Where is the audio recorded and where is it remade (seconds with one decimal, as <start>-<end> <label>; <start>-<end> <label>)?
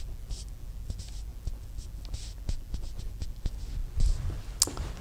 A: 0.0-5.0 recorded